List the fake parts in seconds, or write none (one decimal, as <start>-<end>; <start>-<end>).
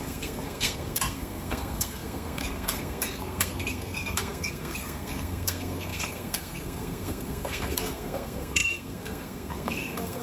0.0-10.2